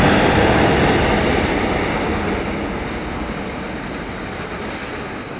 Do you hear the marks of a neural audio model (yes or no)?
no